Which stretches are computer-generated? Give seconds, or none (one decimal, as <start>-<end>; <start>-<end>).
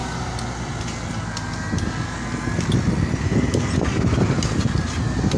none